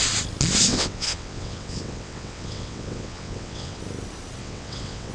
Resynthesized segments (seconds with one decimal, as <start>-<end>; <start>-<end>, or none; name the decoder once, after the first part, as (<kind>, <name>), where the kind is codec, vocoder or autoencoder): 0.7-3.8 (vocoder, WaveNeXt); 4.4-5.1